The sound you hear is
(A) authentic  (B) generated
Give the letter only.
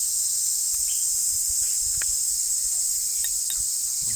A